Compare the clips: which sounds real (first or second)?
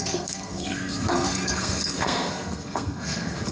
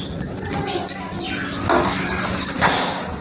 second